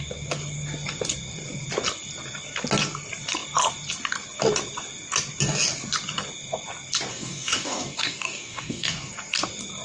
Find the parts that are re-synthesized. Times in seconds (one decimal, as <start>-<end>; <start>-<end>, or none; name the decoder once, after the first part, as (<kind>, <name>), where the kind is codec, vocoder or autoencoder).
7.1-9.1 (codec, DAC)